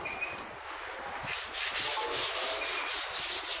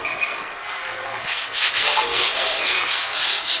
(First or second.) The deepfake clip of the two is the second